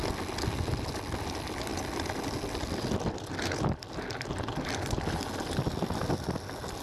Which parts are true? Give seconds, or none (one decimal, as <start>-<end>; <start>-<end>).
0.0-6.8